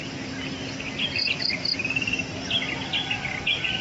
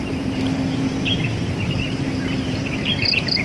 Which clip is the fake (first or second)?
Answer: second